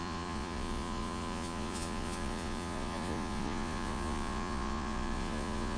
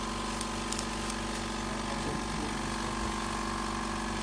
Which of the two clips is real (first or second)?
second